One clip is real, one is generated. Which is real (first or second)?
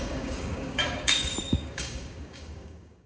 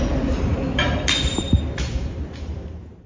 second